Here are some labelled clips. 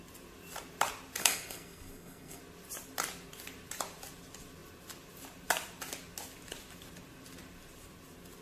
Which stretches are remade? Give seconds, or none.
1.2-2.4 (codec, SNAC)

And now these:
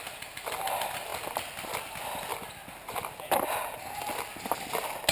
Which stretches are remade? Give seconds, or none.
none

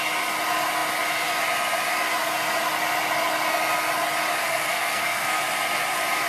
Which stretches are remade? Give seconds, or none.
4.4-5.4 (codec, SNAC)

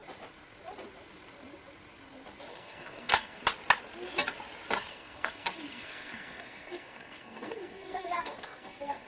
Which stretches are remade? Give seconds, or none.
2.5-3.4 (codec, SNAC); 4.9-9.1

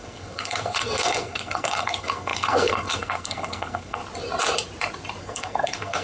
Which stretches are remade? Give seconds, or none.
0.0-4.0 (codec, SNAC); 5.2-6.0

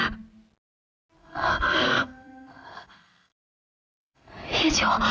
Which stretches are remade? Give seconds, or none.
1.2-4.3 (codec, SNAC)